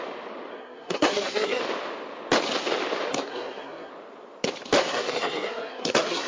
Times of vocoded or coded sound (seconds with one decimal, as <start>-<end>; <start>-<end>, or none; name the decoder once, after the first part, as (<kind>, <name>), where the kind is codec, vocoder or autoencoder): 0.5-1.6 (codec, SNAC); 3.1-3.9; 4.8-6.3